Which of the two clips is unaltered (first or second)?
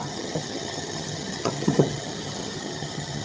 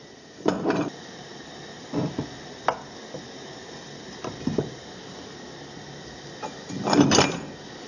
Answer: second